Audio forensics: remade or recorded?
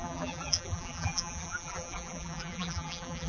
remade